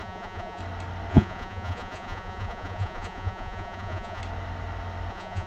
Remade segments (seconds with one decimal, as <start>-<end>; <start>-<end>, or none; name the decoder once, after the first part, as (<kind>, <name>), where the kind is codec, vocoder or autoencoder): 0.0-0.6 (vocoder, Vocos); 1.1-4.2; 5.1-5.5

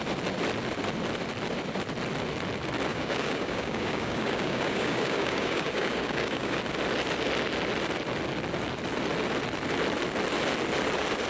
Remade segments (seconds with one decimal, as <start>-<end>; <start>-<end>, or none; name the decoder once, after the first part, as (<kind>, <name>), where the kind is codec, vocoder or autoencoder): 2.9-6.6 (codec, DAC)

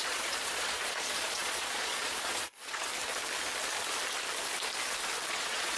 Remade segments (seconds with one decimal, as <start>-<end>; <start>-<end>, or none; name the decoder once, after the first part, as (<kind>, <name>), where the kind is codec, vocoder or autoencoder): 0.0-2.9 (vocoder, Vocos); 5.3-5.8

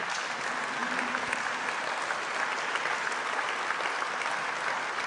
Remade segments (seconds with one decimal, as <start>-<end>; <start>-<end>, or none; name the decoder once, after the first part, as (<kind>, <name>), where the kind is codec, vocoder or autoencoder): none

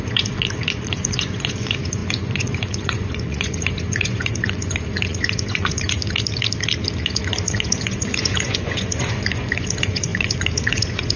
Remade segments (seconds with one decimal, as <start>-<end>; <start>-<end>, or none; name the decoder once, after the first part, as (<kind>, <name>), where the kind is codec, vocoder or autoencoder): 0.0-6.0 (vocoder, Vocos); 7.0-11.2

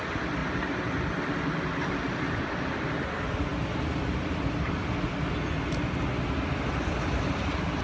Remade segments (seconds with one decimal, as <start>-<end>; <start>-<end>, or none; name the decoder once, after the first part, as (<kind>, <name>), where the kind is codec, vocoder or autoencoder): none

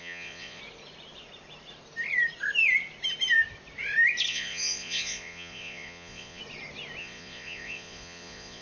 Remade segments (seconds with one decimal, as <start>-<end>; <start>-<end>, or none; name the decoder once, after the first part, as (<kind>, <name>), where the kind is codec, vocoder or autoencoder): 0.0-0.6 (vocoder, Vocos); 4.3-6.4; 7.0-8.6

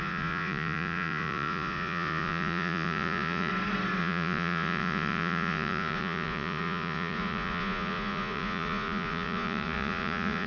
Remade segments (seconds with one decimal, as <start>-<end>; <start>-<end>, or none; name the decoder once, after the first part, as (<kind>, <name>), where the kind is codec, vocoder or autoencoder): 0.0-3.5 (vocoder, Vocos); 4.0-10.5